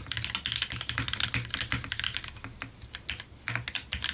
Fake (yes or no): no